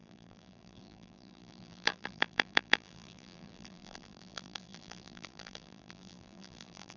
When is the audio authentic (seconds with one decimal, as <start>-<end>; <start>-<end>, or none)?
none